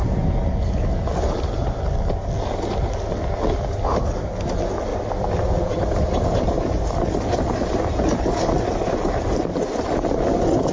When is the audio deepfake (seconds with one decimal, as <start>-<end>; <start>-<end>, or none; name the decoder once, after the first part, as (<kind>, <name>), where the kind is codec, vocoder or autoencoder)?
4.9-5.8 (vocoder, BigVGAN v2)